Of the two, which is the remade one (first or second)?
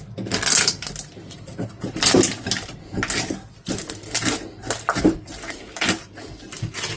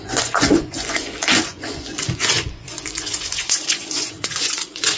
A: second